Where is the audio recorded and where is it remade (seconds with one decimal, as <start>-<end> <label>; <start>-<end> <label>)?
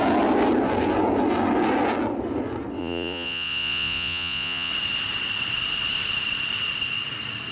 0.0-2.8 recorded; 2.8-4.7 remade; 4.7-7.5 recorded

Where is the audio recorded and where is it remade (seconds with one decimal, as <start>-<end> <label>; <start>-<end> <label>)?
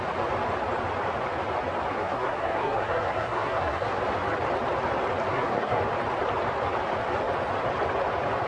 0.0-1.9 recorded; 1.9-4.0 remade; 4.0-5.3 recorded; 5.3-5.8 remade; 5.8-8.5 recorded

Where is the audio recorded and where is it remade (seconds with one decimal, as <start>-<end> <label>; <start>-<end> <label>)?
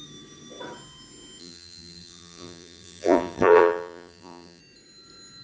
0.0-1.4 recorded; 1.4-4.6 remade; 4.6-5.4 recorded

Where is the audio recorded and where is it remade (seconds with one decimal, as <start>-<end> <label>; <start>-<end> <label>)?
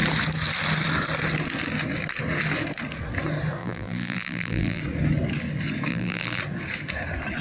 0.0-3.6 recorded; 3.6-4.8 remade; 4.8-5.9 recorded; 5.9-6.4 remade; 6.4-7.4 recorded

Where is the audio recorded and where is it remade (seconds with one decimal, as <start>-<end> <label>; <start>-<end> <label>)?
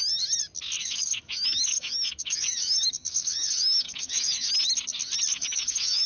0.0-0.8 recorded; 0.8-4.5 remade; 4.5-5.3 recorded; 5.3-6.1 remade